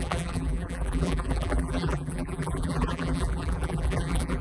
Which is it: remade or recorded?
remade